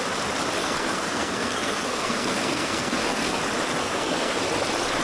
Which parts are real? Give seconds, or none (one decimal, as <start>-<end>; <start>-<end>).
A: 0.0-0.6; 3.4-3.8; 4.4-5.0